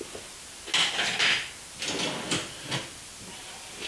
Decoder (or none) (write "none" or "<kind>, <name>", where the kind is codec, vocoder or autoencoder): none